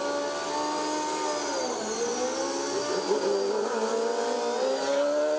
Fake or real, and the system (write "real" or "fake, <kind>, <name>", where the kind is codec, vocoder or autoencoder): real